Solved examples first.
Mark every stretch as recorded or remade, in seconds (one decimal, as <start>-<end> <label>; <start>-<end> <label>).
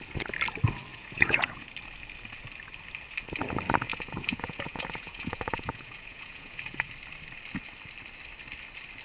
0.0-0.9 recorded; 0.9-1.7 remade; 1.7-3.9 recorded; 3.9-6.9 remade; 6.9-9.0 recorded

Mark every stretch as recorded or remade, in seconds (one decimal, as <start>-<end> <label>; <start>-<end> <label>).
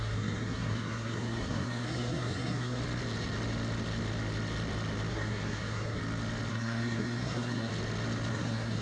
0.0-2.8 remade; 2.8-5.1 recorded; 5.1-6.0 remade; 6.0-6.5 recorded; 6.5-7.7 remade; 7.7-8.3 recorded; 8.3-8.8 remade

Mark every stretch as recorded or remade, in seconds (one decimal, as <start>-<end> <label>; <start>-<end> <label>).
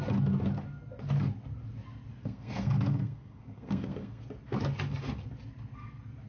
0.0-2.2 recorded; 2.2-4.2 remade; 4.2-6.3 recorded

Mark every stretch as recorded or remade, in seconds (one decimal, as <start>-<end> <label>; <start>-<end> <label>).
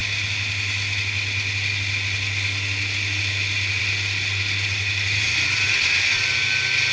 0.0-6.9 recorded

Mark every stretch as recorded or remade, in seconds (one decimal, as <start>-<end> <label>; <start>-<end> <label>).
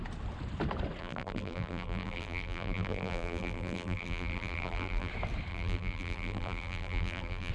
0.0-1.0 recorded; 1.0-5.1 remade; 5.1-5.5 recorded; 5.5-7.5 remade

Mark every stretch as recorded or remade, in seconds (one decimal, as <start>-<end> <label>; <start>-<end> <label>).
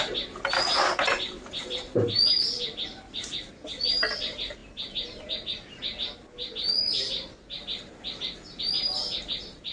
0.0-9.7 recorded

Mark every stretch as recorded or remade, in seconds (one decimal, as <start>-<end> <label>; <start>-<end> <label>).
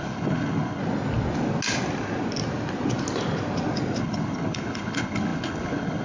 0.0-0.8 remade; 0.8-4.0 recorded; 4.0-6.0 remade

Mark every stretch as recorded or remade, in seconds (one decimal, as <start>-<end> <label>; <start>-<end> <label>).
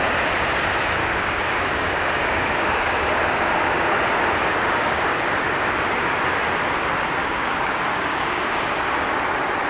0.0-1.0 recorded; 1.0-4.1 remade; 4.1-4.5 recorded; 4.5-5.2 remade; 5.2-7.2 recorded; 7.2-8.7 remade; 8.7-9.7 recorded